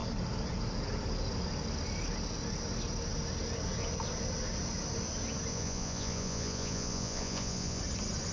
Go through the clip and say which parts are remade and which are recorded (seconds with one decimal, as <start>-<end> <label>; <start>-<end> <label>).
0.0-5.5 recorded; 5.5-7.8 remade; 7.8-8.3 recorded